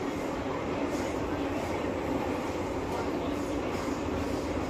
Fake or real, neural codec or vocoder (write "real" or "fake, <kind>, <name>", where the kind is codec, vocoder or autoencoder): fake, vocoder, BigVGAN v2